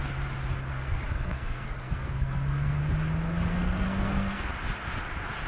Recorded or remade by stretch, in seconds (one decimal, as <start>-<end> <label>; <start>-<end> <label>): 0.0-0.7 recorded; 0.7-2.8 remade; 2.8-3.5 recorded; 3.5-4.5 remade; 4.5-5.5 recorded